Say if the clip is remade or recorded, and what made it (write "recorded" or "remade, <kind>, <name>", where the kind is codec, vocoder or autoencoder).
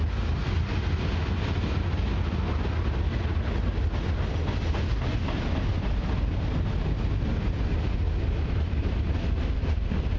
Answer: recorded